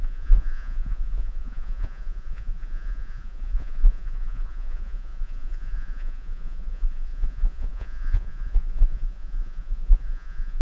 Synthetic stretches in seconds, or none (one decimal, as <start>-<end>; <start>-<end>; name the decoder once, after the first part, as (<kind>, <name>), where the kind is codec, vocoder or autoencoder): 0.0-10.6 (vocoder, Vocos)

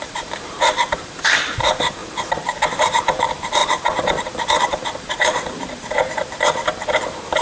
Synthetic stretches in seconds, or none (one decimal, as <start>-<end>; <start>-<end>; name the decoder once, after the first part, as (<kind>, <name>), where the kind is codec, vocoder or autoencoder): 0.0-7.4 (vocoder, BigVGAN v2)